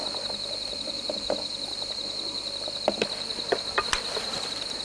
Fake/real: real